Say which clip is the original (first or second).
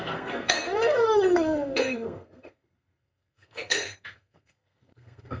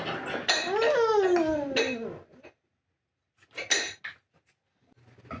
second